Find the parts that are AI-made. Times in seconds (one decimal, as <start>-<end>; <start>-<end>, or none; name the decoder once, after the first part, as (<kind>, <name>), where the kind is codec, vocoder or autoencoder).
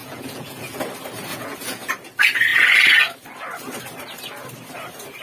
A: 0.0-0.8 (vocoder, Vocos); 1.3-1.9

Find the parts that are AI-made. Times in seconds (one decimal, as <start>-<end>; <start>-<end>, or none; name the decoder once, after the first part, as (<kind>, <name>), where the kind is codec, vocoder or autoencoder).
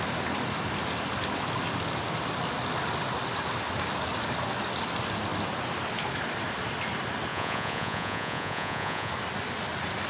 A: 7.3-9.1 (vocoder, Vocos)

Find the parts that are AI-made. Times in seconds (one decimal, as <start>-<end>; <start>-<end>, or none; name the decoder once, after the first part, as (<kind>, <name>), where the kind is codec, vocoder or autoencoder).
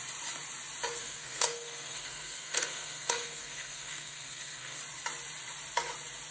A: 1.0-4.8 (codec, SNAC)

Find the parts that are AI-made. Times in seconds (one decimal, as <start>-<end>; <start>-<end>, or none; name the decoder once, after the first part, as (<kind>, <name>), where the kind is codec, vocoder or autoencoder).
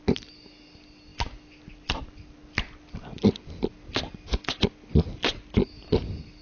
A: none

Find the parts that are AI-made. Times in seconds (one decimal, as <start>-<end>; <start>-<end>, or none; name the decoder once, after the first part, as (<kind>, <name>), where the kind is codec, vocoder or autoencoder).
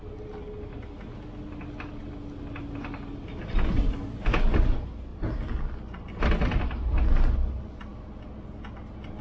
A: none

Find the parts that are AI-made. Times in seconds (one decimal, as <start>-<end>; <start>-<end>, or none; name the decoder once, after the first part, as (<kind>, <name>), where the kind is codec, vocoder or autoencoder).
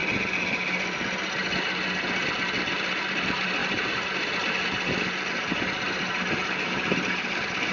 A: none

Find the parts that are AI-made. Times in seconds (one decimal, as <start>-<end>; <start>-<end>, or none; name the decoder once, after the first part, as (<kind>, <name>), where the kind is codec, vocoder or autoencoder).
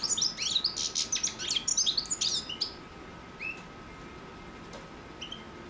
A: none